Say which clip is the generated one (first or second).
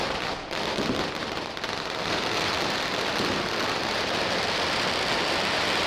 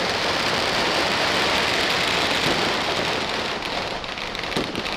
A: second